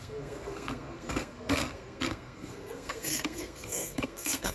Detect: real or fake fake